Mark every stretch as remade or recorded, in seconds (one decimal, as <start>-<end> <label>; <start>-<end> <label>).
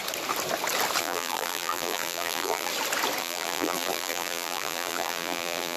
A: 0.0-1.0 recorded; 1.0-2.7 remade; 2.7-3.2 recorded; 3.2-5.8 remade